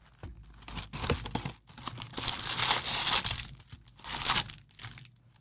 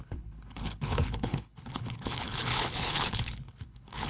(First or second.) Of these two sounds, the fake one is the second